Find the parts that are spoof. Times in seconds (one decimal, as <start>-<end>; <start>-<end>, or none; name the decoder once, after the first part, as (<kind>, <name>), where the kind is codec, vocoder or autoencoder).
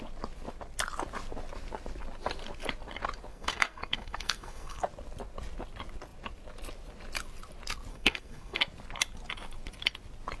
3.3-4.8 (codec, SNAC); 7.9-8.6